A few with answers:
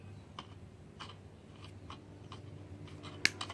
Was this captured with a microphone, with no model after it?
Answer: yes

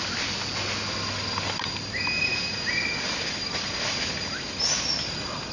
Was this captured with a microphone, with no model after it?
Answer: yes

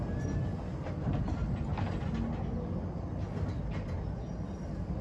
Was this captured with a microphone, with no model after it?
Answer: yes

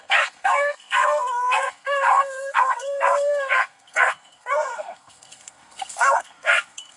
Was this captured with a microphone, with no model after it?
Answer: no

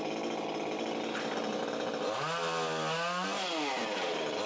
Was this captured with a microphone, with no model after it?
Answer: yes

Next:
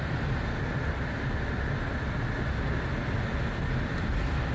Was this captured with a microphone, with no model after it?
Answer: yes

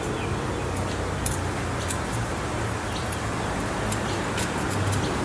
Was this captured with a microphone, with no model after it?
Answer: yes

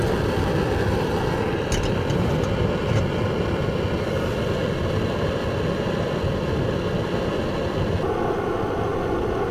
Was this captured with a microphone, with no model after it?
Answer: yes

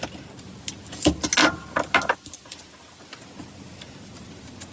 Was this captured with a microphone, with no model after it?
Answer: yes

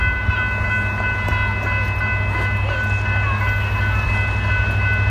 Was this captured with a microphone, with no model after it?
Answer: yes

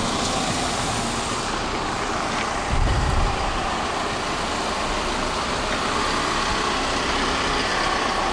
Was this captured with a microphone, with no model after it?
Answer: yes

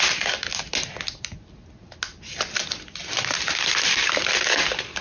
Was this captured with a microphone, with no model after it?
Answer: yes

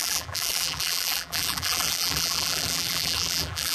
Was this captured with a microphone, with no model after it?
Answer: no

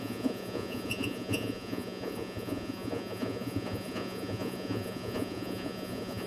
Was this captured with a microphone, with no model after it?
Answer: no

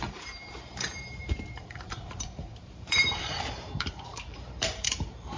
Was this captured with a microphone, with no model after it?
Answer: no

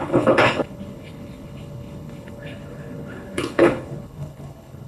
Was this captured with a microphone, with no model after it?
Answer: no